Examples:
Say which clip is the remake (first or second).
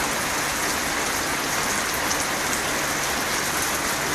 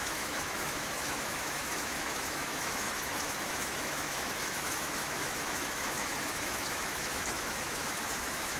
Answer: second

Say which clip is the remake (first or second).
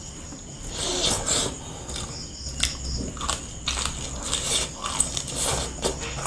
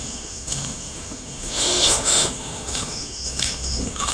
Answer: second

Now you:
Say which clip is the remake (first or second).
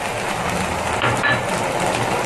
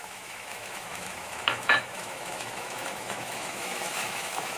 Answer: second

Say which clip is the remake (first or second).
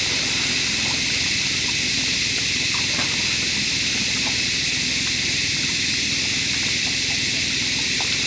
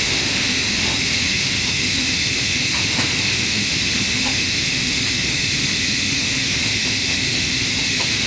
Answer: second